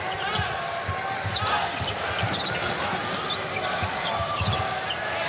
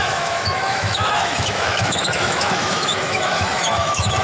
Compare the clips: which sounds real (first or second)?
first